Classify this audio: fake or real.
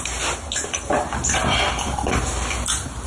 real